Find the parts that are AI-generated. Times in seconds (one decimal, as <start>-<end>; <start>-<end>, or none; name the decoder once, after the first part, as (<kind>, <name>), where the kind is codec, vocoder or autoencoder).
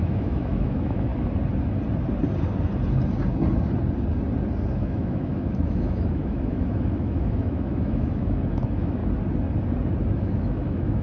0.0-1.1 (autoencoder, DAC-VAE); 4.7-9.0; 10.2-11.0